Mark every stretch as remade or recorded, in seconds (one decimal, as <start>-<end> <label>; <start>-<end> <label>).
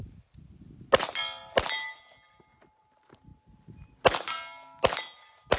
0.0-5.6 recorded